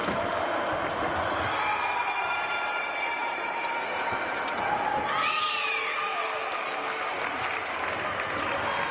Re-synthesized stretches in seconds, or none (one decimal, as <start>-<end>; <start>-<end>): 0.0-1.1; 3.2-3.8